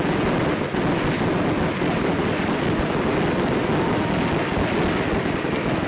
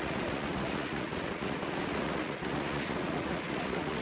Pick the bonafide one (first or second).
first